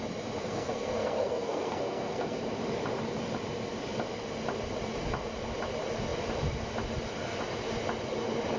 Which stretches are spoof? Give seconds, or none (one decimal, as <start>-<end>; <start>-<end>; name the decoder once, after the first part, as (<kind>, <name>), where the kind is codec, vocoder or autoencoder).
0.4-2.4 (codec, SNAC)